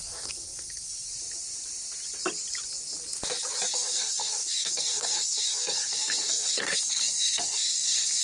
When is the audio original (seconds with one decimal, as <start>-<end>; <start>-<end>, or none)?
1.1-3.7